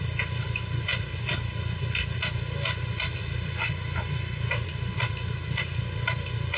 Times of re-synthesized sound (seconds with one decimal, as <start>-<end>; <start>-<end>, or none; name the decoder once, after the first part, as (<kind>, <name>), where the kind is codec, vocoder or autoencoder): none